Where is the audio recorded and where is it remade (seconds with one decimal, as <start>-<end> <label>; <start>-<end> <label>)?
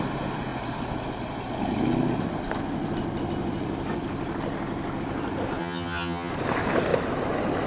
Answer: 0.0-5.6 recorded; 5.6-6.3 remade; 6.3-7.7 recorded